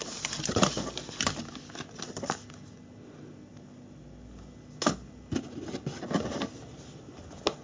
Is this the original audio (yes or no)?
yes